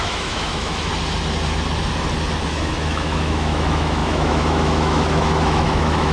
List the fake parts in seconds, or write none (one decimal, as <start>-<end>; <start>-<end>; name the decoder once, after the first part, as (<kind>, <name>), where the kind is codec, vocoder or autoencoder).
0.0-0.9 (autoencoder, DAC-VAE); 2.5-6.1

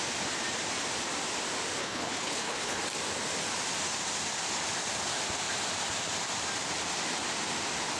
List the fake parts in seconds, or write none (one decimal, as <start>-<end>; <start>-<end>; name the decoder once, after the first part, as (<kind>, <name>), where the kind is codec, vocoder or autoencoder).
1.8-2.8 (codec, HILCodec)

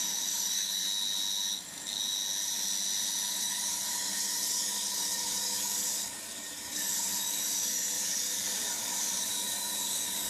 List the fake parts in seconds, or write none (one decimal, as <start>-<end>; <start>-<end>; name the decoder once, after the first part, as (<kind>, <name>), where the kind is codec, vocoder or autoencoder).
0.0-0.8 (codec, DAC); 3.3-10.3

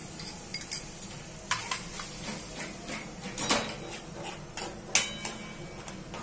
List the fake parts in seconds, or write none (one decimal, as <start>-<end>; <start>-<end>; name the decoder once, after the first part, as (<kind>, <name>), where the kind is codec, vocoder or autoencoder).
none

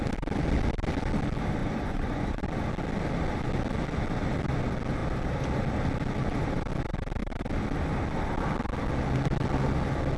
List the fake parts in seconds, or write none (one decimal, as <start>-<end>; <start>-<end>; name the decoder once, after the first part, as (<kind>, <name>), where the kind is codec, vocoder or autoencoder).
1.6-2.4 (vocoder, Vocos)